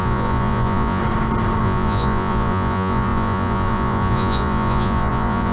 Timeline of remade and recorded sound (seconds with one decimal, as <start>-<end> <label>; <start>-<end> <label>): 0.0-1.0 remade; 1.0-1.6 recorded; 1.6-5.5 remade